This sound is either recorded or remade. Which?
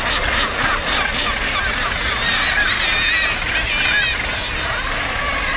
recorded